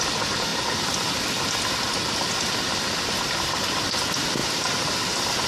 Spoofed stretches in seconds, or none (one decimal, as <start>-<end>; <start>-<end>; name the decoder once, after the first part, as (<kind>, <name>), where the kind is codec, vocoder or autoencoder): none